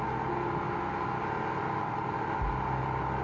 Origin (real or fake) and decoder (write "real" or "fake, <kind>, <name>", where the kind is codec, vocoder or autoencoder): real